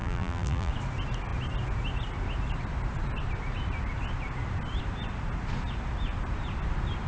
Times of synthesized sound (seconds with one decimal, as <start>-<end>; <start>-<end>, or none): 0.0-0.7